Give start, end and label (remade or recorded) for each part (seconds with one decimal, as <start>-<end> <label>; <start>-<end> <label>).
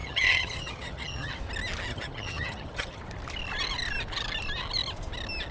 0.0-1.4 remade; 1.4-1.9 recorded; 1.9-3.0 remade; 3.0-5.5 recorded